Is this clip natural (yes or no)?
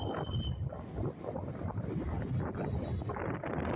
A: yes